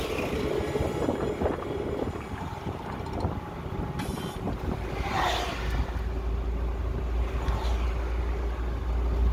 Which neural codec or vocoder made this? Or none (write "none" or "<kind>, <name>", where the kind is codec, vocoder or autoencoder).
none